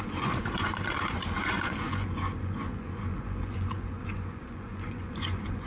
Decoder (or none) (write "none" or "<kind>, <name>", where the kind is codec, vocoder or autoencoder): vocoder, Vocos